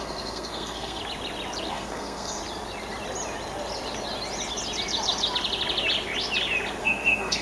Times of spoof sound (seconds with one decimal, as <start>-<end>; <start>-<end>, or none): 0.0-1.0; 1.7-2.4; 6.8-7.4